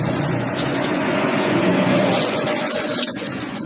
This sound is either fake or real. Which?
fake